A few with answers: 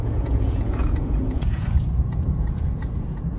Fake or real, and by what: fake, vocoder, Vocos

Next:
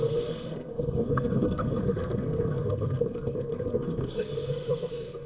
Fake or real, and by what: fake, codec, SNAC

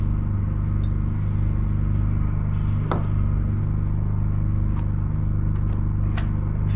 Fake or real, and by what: real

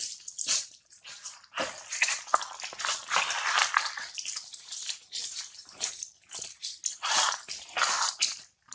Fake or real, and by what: real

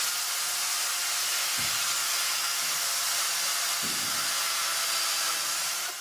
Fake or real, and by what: real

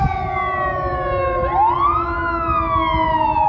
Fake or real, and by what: real